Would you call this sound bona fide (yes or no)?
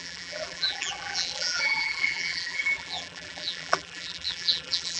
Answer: no